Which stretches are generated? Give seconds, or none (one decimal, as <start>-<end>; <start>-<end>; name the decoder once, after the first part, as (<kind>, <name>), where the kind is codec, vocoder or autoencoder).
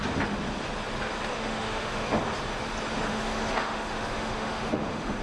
1.3-2.2 (autoencoder, DAC-VAE); 3.1-5.2